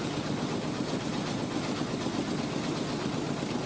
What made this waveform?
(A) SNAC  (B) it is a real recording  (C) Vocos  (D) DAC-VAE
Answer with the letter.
B